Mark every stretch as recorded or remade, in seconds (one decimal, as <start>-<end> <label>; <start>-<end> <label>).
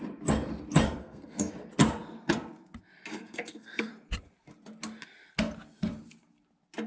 0.0-1.0 recorded; 1.0-1.5 remade; 1.5-3.1 recorded; 3.1-3.9 remade; 3.9-6.9 recorded